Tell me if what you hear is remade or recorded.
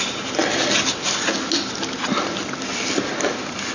recorded